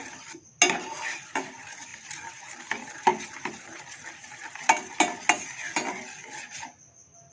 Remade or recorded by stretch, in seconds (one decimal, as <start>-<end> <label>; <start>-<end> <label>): 0.0-7.3 recorded